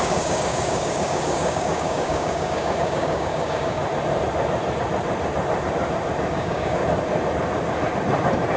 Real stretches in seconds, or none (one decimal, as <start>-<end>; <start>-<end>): 3.8-6.3; 6.8-8.6